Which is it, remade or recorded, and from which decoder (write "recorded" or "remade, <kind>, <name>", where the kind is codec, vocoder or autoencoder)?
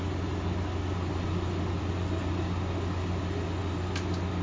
recorded